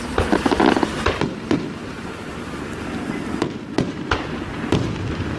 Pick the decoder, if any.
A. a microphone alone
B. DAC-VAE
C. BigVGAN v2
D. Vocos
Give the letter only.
A